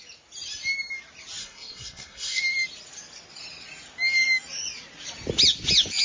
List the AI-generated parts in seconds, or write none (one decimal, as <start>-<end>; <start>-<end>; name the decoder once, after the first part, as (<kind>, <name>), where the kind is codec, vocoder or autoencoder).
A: 1.4-2.4 (codec, SNAC)